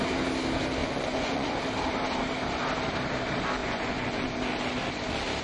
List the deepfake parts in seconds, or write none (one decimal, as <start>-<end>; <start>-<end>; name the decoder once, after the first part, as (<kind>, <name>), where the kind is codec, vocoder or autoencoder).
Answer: 0.8-1.6 (vocoder, Vocos); 3.6-4.3